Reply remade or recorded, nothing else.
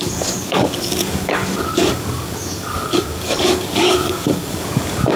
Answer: remade